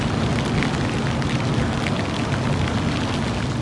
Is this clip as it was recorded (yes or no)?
yes